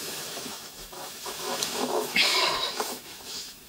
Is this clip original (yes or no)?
no